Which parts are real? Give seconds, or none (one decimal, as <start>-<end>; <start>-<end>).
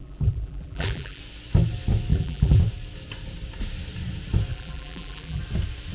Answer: 1.2-2.1; 2.6-4.5; 5.4-5.9